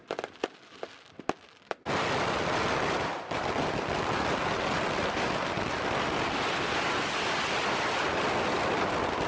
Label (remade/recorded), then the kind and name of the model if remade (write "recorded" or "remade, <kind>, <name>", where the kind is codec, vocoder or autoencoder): recorded